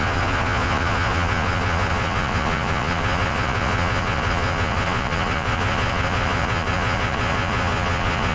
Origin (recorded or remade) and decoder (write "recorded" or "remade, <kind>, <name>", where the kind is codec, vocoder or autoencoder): remade, vocoder, Vocos